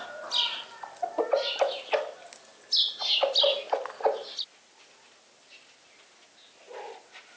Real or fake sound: real